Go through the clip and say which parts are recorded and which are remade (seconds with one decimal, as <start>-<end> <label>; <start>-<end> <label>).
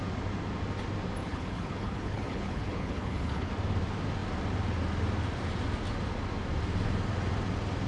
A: 0.0-1.2 recorded; 1.2-3.5 remade; 3.5-7.9 recorded